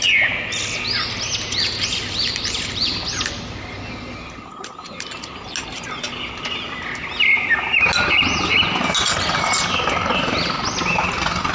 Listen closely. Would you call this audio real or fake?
real